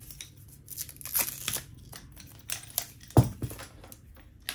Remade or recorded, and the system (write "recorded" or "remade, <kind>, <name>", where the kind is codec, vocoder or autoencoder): recorded